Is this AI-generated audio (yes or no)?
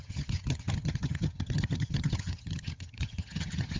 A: yes